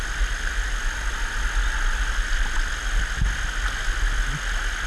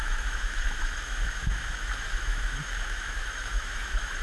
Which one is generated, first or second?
second